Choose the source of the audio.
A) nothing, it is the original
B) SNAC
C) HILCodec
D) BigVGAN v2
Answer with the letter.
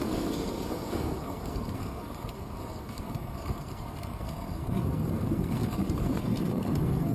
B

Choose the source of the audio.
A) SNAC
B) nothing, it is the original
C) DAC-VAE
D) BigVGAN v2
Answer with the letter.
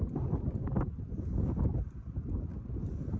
B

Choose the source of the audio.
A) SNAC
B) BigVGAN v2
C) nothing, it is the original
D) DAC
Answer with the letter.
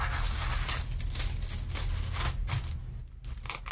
C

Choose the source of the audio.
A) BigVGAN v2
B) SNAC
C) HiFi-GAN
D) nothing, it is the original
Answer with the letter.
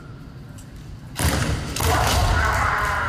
D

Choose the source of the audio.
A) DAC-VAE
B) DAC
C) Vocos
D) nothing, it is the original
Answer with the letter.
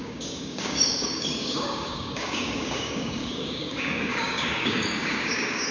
B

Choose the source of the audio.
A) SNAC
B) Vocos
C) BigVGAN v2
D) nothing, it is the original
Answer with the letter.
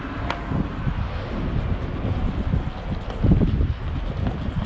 D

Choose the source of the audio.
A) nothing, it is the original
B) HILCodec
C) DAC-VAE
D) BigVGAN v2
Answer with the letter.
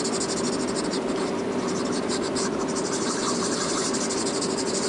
A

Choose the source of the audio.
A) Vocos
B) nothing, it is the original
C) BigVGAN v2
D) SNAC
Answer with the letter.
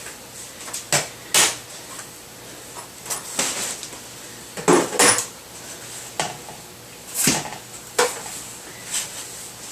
B